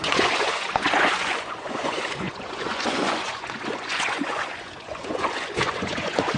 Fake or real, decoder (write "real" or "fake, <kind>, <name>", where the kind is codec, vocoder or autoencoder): fake, vocoder, Vocos